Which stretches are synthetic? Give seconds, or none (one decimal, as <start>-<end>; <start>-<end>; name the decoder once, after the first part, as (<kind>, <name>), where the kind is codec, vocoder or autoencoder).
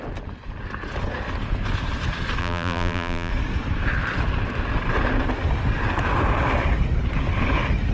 2.4-3.3 (vocoder, BigVGAN v2)